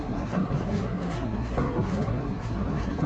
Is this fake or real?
fake